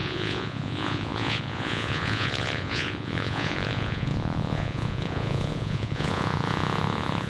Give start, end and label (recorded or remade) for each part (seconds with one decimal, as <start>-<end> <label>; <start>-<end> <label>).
0.0-7.3 remade